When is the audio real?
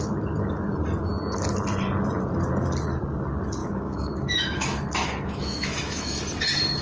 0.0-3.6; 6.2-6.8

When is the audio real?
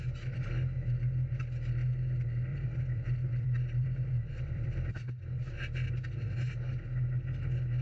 0.0-2.5; 4.9-7.8